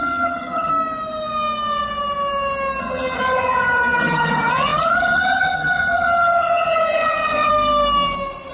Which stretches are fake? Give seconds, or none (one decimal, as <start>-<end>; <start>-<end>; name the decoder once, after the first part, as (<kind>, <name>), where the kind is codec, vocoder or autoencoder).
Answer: 0.0-0.7 (vocoder, HiFi-GAN); 2.8-7.5